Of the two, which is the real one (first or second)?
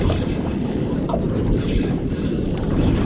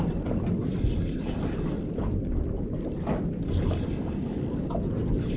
second